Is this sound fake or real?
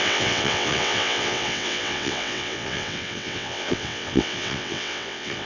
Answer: fake